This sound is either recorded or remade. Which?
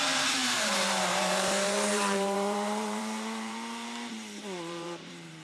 remade